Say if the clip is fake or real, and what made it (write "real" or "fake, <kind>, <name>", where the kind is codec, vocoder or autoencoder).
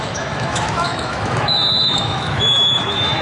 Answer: fake, autoencoder, DAC-VAE